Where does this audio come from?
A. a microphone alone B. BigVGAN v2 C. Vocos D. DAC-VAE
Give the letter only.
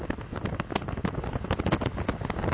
A